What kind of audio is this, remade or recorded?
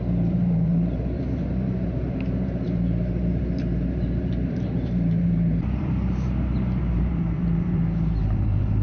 remade